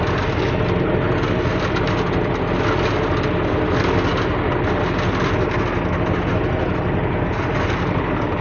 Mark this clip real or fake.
real